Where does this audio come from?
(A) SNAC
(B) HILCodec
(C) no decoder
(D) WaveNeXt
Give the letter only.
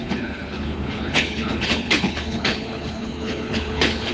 B